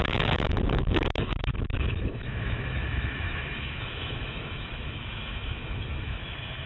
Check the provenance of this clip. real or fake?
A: fake